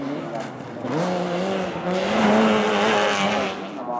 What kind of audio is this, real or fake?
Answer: real